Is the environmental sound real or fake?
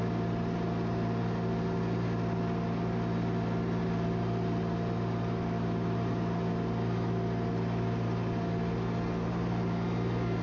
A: real